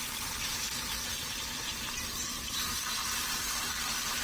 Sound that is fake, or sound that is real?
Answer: fake